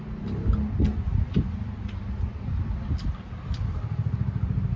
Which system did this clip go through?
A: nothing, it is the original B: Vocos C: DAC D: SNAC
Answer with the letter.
A